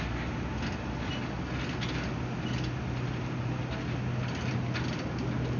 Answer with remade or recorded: recorded